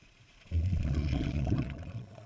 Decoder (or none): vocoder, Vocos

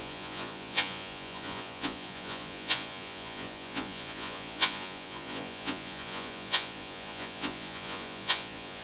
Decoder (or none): vocoder, Vocos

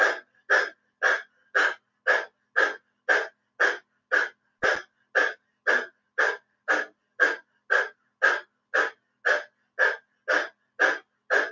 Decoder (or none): none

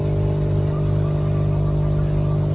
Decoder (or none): none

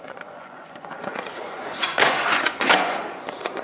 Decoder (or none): vocoder, Vocos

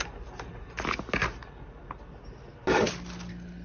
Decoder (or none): none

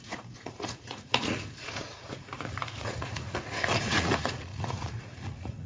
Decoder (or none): vocoder, Vocos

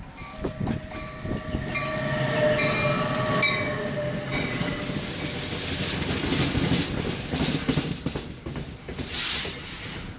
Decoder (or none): none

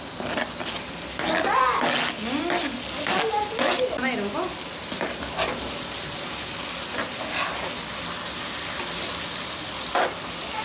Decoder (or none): none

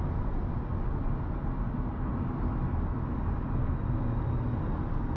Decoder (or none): none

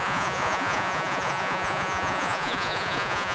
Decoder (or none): vocoder, Vocos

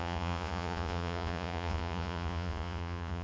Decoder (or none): vocoder, Vocos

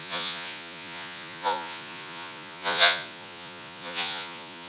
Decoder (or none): vocoder, Vocos